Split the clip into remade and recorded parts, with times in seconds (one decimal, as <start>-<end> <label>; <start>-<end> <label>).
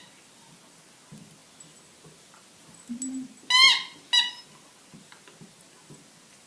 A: 0.0-6.5 recorded